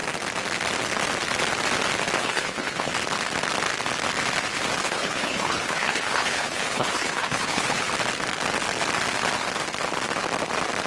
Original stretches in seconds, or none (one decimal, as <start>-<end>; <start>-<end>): 0.0-2.2; 2.9-4.8; 7.9-10.9